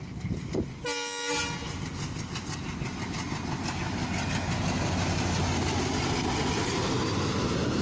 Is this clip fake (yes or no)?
no